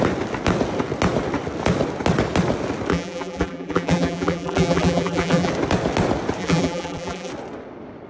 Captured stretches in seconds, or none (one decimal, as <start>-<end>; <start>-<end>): 0.0-2.9; 5.5-6.4; 7.3-8.1